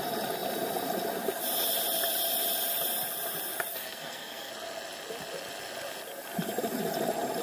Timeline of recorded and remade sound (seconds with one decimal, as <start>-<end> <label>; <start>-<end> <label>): 0.0-3.7 recorded; 3.7-4.5 remade; 4.5-7.4 recorded

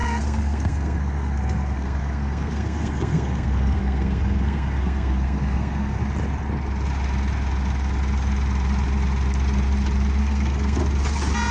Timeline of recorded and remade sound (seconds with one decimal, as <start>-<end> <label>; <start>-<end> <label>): 0.0-6.0 remade; 6.0-10.2 recorded; 10.2-10.8 remade; 10.8-11.5 recorded

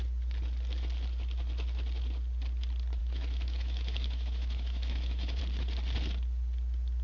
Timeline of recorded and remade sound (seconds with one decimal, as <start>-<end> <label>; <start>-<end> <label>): 0.0-3.0 recorded; 3.0-5.4 remade; 5.4-7.0 recorded

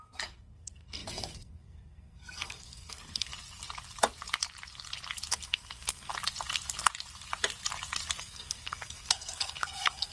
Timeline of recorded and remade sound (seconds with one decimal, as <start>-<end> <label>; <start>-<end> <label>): 0.0-3.3 remade; 3.3-5.3 recorded; 5.3-6.1 remade; 6.1-8.2 recorded; 8.2-10.1 remade

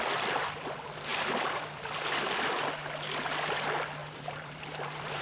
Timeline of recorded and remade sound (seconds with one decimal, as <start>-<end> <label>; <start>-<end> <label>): 0.0-4.0 recorded; 4.0-5.2 remade

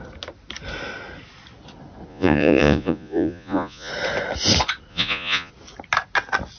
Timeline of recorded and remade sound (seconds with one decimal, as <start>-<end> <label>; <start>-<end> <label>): 0.0-2.1 recorded; 2.1-3.9 remade; 3.9-4.9 recorded; 4.9-5.5 remade; 5.5-6.6 recorded

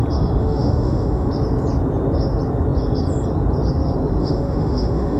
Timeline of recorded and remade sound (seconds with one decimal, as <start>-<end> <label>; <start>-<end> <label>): 0.0-0.4 recorded; 0.4-1.3 remade; 1.3-4.2 recorded; 4.2-5.2 remade

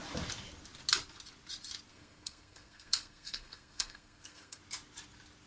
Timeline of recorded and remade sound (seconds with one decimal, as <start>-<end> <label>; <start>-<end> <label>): 0.0-1.9 recorded; 1.9-4.6 remade; 4.6-5.5 recorded